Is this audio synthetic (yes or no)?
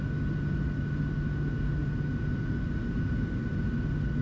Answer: no